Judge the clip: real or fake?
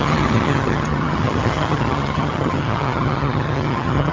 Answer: fake